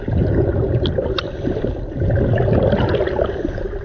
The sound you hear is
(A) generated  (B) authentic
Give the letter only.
B